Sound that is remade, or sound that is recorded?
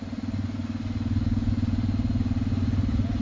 recorded